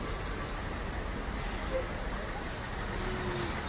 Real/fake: real